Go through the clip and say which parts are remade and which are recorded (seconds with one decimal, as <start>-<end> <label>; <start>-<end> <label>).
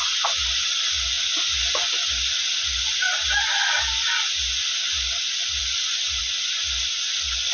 0.0-7.5 recorded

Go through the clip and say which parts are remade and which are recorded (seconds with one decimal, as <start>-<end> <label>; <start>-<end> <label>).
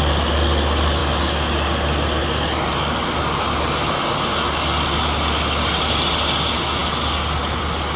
0.0-8.0 recorded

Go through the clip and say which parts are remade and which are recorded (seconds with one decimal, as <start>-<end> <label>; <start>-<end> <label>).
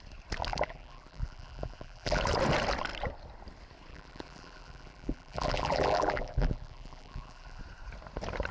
0.0-0.5 recorded; 0.5-2.2 remade; 2.2-3.9 recorded; 3.9-7.6 remade; 7.6-8.5 recorded